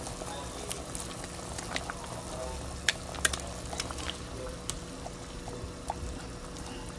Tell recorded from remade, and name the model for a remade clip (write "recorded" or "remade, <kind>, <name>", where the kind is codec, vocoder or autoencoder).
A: recorded